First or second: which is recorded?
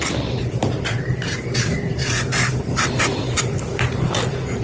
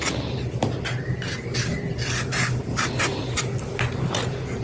second